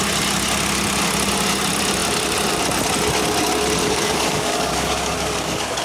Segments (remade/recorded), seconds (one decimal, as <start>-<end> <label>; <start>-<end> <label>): 0.0-3.8 recorded; 3.8-5.8 remade